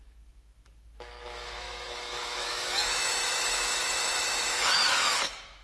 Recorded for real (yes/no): no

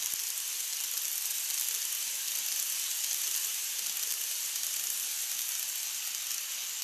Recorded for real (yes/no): yes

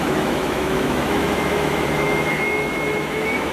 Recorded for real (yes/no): no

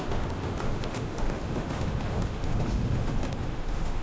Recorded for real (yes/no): no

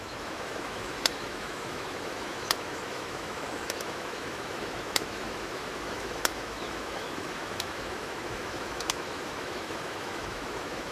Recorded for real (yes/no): no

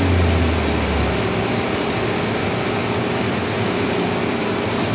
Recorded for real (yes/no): yes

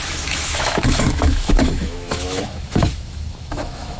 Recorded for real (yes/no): no